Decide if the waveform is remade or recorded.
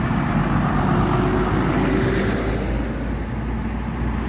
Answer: recorded